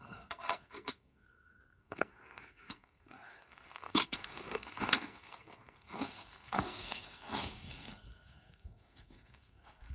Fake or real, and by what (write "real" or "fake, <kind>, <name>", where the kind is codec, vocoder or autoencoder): fake, codec, SNAC